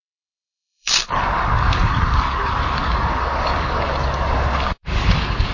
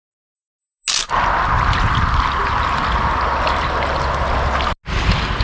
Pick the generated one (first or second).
first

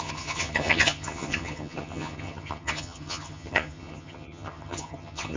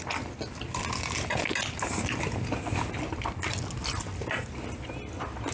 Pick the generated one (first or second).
first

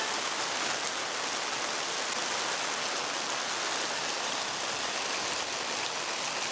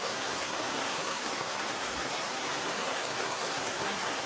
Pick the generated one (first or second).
second